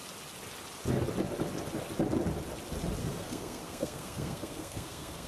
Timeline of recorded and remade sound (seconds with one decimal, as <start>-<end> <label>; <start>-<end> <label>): 0.0-3.0 recorded; 3.0-5.3 remade